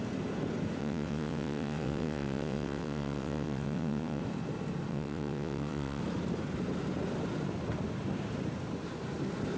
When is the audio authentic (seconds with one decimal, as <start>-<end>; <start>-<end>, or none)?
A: 0.0-0.8; 4.2-4.9; 6.0-9.6